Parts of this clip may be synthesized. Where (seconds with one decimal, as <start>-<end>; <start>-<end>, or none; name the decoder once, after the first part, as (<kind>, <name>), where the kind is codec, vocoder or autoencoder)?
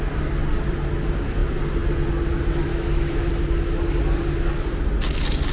2.7-3.3 (autoencoder, DAC-VAE)